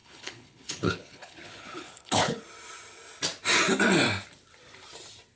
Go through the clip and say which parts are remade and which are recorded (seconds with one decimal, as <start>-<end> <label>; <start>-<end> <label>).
0.0-2.4 remade; 2.4-5.4 recorded